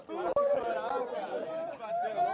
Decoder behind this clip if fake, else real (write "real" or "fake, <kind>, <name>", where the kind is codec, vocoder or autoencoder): real